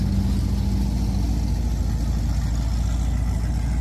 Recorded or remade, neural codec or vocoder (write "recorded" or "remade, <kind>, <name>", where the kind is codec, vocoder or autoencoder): recorded